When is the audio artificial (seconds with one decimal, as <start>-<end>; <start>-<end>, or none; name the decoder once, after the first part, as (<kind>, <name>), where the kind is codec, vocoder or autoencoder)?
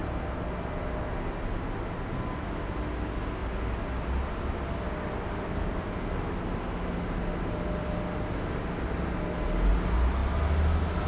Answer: none